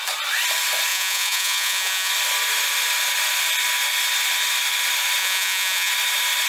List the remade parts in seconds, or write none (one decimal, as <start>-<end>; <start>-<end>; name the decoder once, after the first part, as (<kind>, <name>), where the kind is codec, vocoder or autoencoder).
0.9-2.1 (vocoder, Vocos); 5.2-5.9

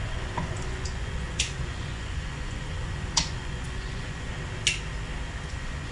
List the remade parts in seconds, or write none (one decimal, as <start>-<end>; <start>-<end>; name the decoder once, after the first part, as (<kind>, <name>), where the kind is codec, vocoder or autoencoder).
0.0-4.3 (vocoder, Vocos); 5.5-5.9

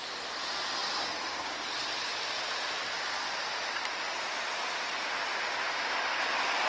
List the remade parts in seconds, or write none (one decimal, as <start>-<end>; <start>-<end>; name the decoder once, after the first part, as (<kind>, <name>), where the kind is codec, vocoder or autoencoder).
none

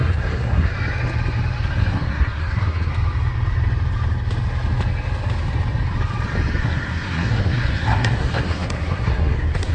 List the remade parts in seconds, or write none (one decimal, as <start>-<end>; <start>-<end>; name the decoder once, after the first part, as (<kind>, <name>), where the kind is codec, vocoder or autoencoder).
0.0-0.7 (codec, SNAC); 1.7-2.9; 6.6-9.7

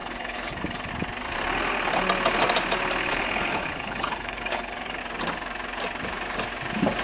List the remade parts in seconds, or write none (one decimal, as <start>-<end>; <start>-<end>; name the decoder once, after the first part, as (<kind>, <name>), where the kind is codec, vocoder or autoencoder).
0.0-0.9 (codec, HILCodec); 3.0-5.0

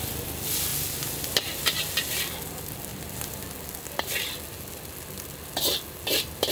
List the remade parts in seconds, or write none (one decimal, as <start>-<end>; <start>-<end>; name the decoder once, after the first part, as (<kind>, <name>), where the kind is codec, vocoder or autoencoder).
none

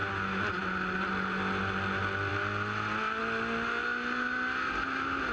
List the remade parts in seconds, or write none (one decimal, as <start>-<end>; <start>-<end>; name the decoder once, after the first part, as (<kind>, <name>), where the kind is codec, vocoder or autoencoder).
none

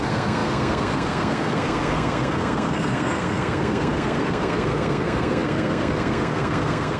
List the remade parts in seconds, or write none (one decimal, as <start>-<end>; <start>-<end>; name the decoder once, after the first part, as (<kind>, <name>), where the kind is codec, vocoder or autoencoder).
0.0-7.0 (codec, SNAC)